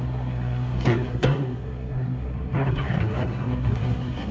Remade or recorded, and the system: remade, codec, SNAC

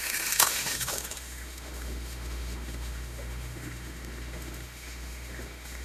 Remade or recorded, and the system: remade, autoencoder, DAC-VAE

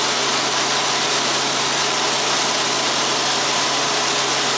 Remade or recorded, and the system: recorded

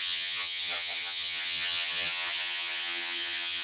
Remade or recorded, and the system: remade, vocoder, HiFi-GAN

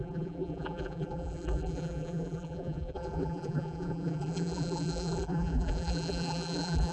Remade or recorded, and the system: remade, vocoder, BigVGAN v2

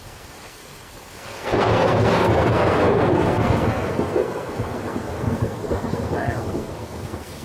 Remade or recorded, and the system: remade, codec, SNAC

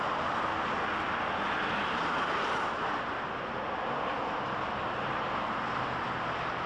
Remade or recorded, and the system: recorded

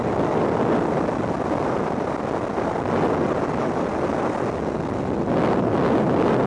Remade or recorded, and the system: recorded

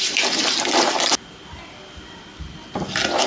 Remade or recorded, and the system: recorded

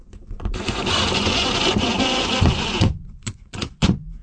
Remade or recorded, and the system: remade, vocoder, Vocos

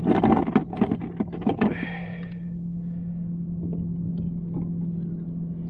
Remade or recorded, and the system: recorded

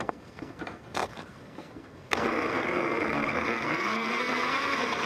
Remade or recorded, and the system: remade, codec, SNAC